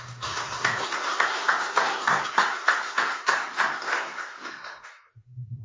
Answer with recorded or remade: remade